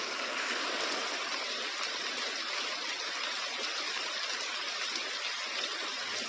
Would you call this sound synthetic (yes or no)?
no